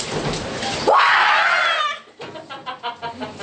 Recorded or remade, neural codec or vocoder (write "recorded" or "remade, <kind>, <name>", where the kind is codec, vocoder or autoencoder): recorded